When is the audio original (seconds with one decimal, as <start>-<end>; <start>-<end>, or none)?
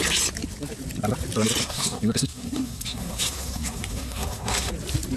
0.0-1.6; 4.7-5.2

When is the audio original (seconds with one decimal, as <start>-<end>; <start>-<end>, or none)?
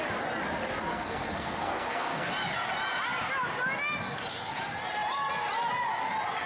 0.0-0.9; 2.3-6.5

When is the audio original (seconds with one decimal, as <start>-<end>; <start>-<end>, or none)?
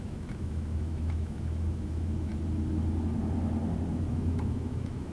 2.3-4.1